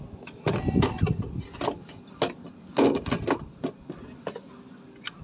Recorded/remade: recorded